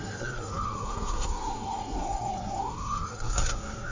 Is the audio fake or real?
fake